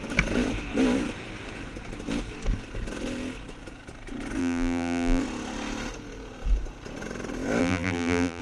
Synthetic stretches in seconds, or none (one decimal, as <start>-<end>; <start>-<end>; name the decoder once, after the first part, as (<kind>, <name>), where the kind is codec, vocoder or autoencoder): 4.4-5.2 (vocoder, BigVGAN v2); 7.6-8.4